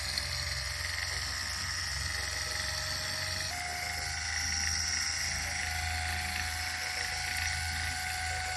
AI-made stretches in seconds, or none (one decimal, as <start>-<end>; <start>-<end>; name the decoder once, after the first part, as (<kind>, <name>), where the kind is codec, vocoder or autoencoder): none